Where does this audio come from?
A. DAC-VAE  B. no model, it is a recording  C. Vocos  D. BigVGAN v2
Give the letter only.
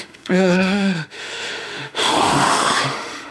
A